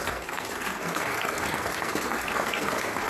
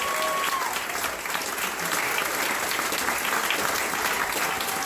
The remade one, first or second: first